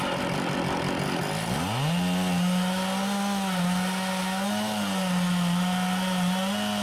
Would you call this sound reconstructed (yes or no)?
no